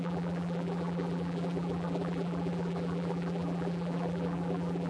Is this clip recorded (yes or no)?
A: no